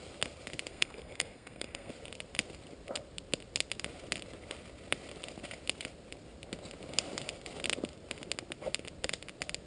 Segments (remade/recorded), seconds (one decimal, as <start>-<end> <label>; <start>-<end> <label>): 0.0-0.7 recorded; 0.7-1.9 remade; 1.9-9.7 recorded